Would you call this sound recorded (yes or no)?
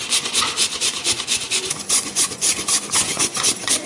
no